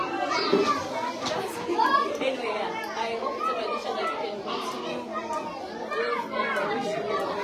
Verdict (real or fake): real